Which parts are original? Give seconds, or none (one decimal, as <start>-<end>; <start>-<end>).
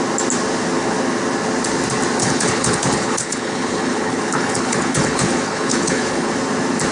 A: 0.0-2.2; 6.3-6.9